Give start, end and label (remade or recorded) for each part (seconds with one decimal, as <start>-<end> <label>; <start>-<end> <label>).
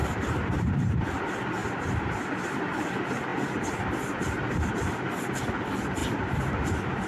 0.0-1.1 remade; 1.1-1.6 recorded; 1.6-2.2 remade; 2.2-6.0 recorded; 6.0-7.1 remade